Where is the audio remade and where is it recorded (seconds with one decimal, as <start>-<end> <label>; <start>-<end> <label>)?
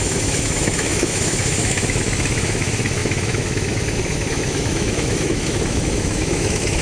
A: 0.0-6.8 remade